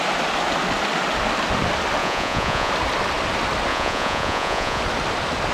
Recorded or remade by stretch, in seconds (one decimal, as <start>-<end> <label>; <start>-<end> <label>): 0.0-2.0 recorded; 2.0-2.7 remade; 2.7-3.7 recorded; 3.7-4.8 remade; 4.8-5.5 recorded